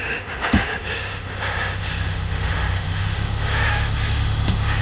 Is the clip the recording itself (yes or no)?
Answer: no